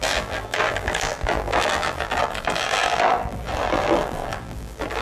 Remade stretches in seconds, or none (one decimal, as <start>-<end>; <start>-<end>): 0.0-5.0